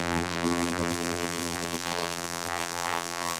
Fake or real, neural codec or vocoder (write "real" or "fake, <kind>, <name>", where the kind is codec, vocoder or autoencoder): fake, vocoder, BigVGAN v2